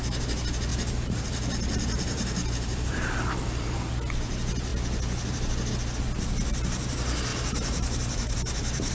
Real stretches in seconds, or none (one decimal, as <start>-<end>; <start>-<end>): 0.0-0.7; 3.9-7.3